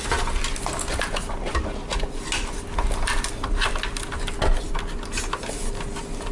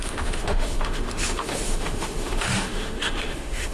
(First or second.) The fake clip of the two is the second